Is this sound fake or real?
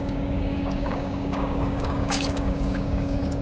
fake